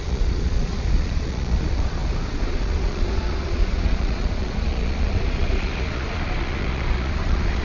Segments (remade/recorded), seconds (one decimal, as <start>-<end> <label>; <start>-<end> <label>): 0.0-7.6 remade